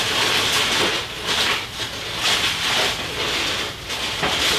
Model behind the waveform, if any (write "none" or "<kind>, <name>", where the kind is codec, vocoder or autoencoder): none